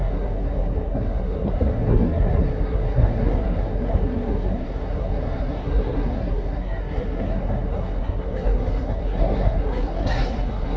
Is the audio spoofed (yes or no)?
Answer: yes